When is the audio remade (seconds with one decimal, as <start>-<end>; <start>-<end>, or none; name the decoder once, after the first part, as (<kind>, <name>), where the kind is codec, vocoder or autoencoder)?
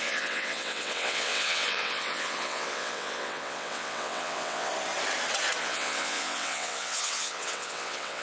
0.0-4.7 (vocoder, WaveNeXt); 5.6-8.2